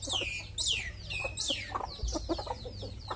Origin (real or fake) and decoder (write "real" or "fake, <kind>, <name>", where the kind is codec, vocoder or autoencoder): real